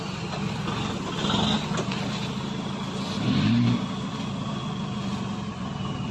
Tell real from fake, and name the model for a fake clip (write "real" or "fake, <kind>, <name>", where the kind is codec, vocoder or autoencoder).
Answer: real